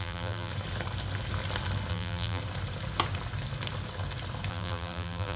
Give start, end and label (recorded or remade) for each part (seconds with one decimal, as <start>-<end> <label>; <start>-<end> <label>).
0.0-0.5 remade; 0.5-1.9 recorded; 1.9-2.4 remade; 2.4-4.5 recorded; 4.5-5.4 remade